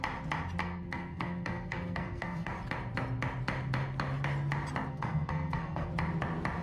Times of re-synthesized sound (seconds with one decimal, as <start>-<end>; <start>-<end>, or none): 0.6-2.5; 4.9-5.9